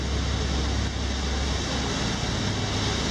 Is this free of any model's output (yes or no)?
yes